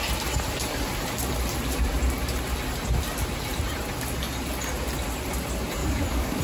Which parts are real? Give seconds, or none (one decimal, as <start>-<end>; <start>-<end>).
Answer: 0.0-5.8